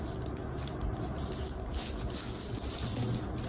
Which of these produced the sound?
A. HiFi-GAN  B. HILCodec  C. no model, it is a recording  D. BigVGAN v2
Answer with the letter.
C